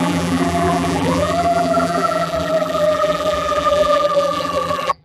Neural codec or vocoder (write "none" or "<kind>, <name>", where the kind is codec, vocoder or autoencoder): vocoder, BigVGAN v2